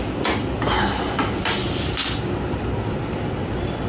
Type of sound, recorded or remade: recorded